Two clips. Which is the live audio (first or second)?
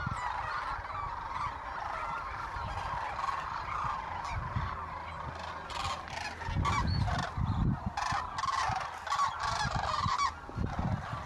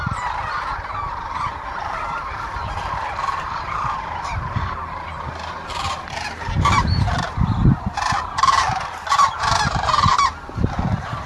first